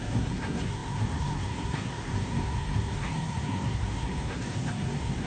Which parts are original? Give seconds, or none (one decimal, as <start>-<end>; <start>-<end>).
none